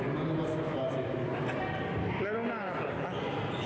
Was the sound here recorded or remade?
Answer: recorded